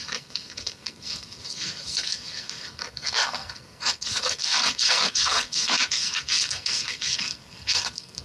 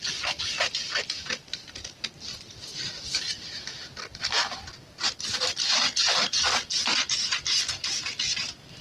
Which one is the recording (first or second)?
second